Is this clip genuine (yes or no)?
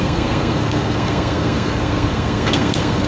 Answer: no